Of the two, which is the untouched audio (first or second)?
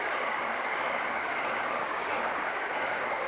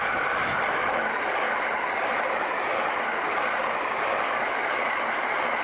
second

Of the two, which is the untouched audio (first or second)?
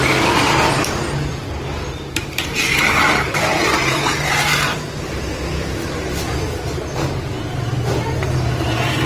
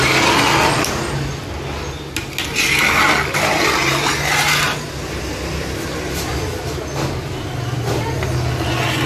second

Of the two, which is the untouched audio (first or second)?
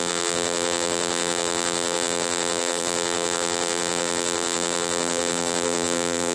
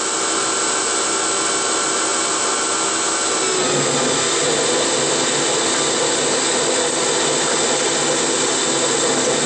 second